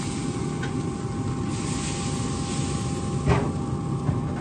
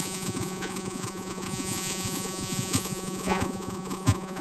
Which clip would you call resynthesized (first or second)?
second